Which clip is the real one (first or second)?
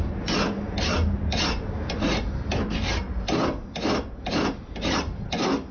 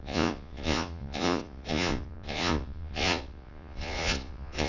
first